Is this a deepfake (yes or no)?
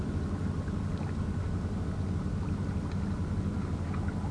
no